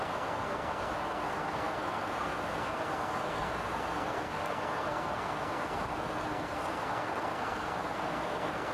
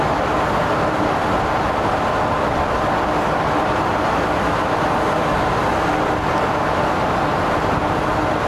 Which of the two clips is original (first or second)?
second